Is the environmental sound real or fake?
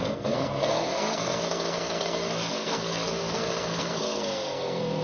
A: fake